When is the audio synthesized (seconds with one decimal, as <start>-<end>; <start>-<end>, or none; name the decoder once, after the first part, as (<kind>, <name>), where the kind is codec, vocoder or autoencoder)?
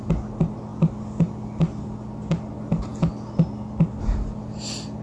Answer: none